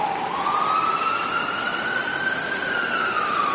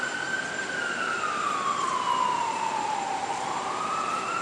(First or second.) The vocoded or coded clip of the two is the first